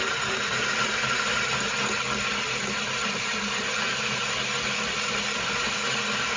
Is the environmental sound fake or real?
real